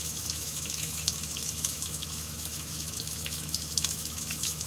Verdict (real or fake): fake